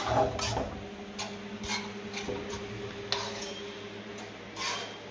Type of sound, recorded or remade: recorded